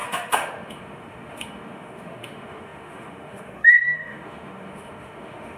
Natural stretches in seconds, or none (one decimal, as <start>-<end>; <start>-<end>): none